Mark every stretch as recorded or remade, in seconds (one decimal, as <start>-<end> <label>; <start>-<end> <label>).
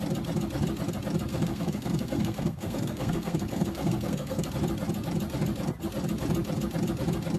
0.0-1.3 recorded; 1.3-4.5 remade; 4.5-7.4 recorded